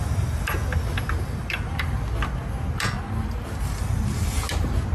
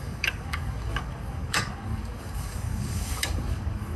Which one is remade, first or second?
second